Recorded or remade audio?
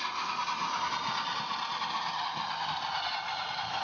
recorded